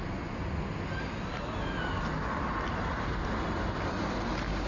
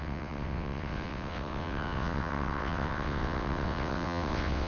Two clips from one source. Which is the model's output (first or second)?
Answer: second